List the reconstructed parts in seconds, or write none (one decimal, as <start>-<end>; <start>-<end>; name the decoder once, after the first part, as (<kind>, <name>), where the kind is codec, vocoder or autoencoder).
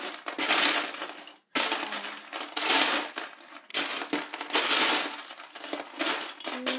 none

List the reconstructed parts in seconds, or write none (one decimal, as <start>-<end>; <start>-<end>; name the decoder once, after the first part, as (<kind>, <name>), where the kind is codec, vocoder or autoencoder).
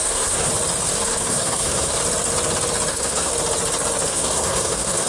0.0-0.5 (codec, SNAC); 1.0-2.0; 2.9-3.3; 4.1-5.1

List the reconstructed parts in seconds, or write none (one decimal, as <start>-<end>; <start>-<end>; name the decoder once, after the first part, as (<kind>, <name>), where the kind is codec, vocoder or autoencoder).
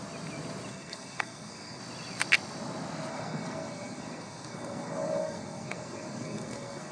0.7-1.8 (codec, SNAC); 3.1-6.9